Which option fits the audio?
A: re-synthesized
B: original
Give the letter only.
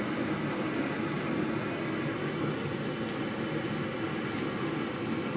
B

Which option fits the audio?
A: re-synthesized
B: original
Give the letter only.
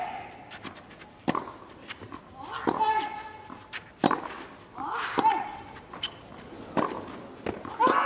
B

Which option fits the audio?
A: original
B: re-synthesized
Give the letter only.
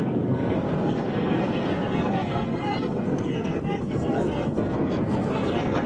B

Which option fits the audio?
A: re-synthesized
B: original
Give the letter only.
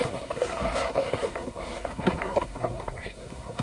A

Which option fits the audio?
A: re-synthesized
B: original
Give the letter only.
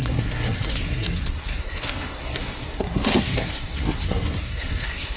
A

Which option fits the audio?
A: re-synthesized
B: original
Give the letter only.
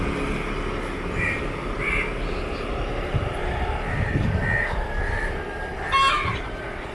B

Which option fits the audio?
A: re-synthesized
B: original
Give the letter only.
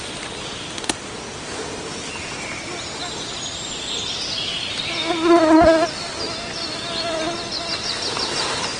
B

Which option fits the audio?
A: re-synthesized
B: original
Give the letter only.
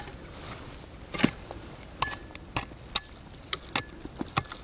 B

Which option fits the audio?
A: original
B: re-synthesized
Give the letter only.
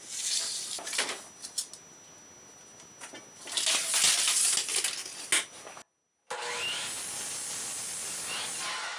A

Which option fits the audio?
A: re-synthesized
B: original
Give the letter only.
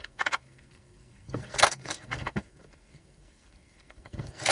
A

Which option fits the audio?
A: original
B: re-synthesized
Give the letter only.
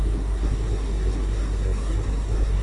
B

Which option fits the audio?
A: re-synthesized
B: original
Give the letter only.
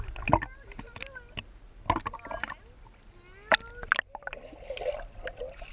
B